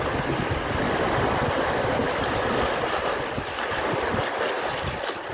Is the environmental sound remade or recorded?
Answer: recorded